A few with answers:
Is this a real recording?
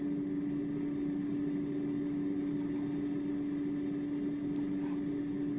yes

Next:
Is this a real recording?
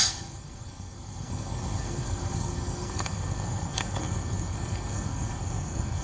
no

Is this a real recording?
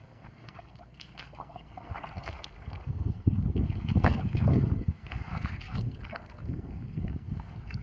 no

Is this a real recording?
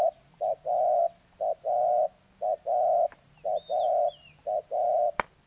yes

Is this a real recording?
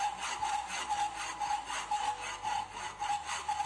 yes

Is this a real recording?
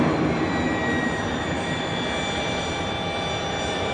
yes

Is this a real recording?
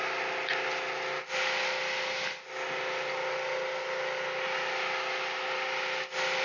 yes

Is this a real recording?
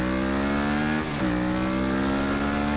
yes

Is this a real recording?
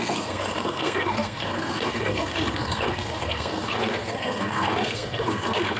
no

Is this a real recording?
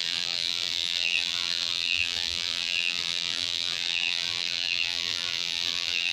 no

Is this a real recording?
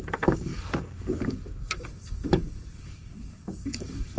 no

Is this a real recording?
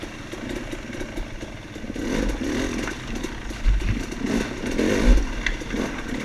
yes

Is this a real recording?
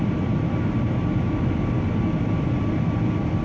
yes